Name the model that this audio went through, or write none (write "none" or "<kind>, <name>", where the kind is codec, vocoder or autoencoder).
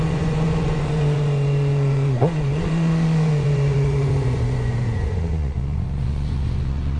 vocoder, Vocos